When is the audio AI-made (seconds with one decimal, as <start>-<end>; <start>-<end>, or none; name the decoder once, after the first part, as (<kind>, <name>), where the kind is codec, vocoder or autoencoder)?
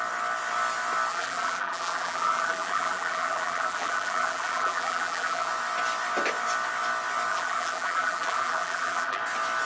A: 1.1-5.5 (vocoder, BigVGAN v2); 7.3-9.2